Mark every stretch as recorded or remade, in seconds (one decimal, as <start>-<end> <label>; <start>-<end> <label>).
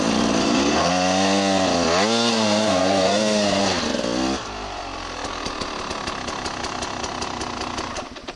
0.0-0.4 recorded; 0.4-0.9 remade; 0.9-2.3 recorded; 2.3-3.6 remade; 3.6-8.4 recorded